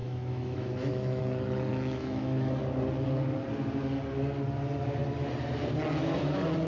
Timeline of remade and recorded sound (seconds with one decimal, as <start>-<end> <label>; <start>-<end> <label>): 0.0-1.2 remade; 1.2-1.7 recorded; 1.7-2.6 remade; 2.6-6.7 recorded

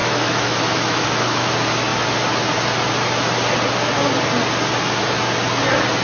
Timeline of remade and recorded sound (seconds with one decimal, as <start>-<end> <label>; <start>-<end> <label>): 0.0-1.5 remade; 1.5-6.0 recorded

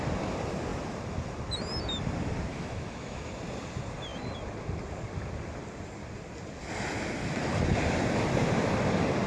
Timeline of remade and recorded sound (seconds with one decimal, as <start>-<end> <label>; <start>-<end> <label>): 0.0-2.5 recorded; 2.5-3.3 remade; 3.3-9.3 recorded

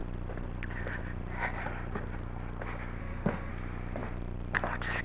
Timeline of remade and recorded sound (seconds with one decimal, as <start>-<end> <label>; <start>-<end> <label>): 0.0-3.0 recorded; 3.0-3.5 remade; 3.5-5.0 recorded

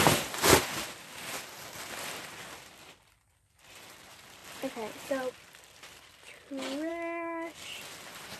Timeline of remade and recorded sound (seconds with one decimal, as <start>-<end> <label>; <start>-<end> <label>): 0.0-6.9 recorded; 6.9-7.5 remade; 7.5-8.4 recorded